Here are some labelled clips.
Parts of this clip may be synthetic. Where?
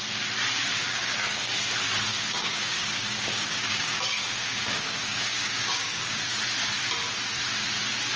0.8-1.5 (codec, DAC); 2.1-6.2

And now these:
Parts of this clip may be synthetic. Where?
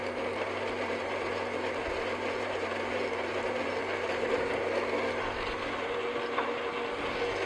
0.0-4.5 (vocoder, BigVGAN v2)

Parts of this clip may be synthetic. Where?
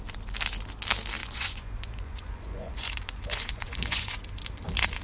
1.2-4.2 (vocoder, Vocos)